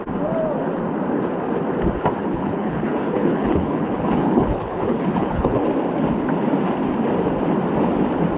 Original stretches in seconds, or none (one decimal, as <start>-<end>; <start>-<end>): 0.0-2.2; 5.6-8.4